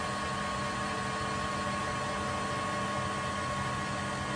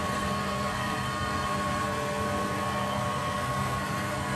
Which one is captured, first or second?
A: first